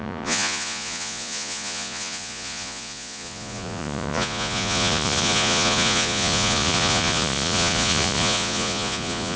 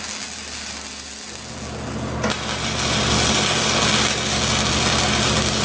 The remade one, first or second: first